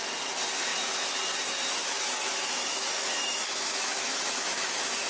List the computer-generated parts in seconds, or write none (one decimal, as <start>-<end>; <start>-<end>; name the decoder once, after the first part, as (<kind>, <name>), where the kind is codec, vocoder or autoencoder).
0.7-1.2 (autoencoder, DAC-VAE); 1.8-5.1